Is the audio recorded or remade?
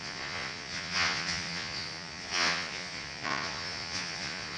remade